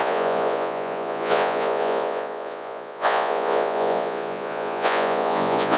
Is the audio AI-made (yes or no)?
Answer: yes